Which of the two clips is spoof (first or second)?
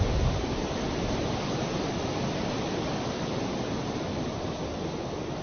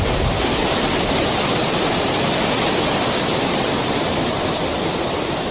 second